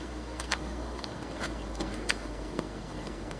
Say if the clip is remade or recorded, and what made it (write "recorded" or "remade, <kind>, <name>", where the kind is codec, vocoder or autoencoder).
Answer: remade, codec, SNAC